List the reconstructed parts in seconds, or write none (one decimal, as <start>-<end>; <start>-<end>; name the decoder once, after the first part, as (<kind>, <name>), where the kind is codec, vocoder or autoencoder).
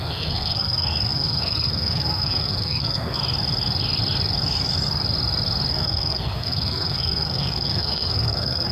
0.0-3.2 (codec, SNAC); 5.7-8.7